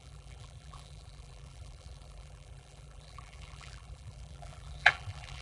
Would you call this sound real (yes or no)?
no